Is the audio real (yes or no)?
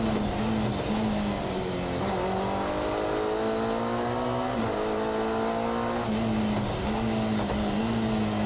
yes